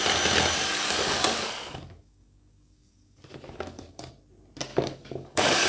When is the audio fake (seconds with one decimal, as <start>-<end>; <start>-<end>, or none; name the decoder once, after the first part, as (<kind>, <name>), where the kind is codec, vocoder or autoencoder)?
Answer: 0.7-4.1 (codec, DAC); 4.7-5.7